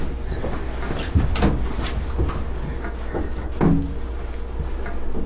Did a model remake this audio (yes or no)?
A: no